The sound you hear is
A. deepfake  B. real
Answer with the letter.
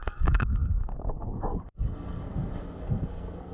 A